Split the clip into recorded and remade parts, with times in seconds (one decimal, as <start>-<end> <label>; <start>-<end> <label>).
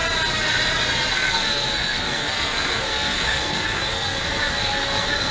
0.0-1.1 recorded; 1.1-5.3 remade